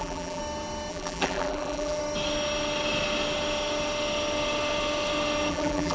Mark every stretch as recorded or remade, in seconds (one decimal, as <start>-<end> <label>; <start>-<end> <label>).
0.0-0.4 remade; 0.4-0.9 recorded; 0.9-2.0 remade; 2.0-5.5 recorded; 5.5-5.9 remade